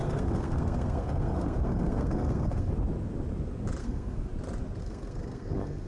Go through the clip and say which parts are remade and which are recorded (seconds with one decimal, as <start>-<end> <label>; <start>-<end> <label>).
0.0-2.7 remade; 2.7-3.8 recorded; 3.8-4.3 remade; 4.3-4.8 recorded; 4.8-5.9 remade